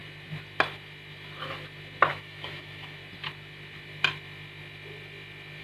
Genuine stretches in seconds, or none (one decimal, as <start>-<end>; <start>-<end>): 0.0-2.1; 3.0-5.6